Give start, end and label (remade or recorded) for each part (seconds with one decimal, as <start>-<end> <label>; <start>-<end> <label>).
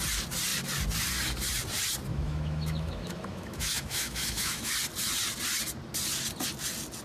0.0-2.1 recorded; 2.1-4.7 remade; 4.7-7.0 recorded